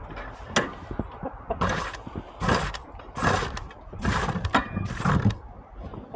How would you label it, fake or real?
real